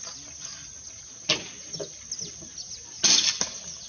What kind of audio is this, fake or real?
real